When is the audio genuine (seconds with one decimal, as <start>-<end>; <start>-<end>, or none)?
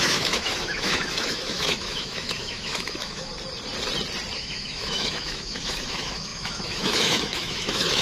3.3-4.4